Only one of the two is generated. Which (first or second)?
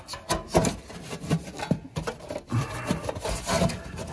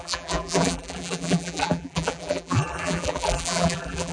second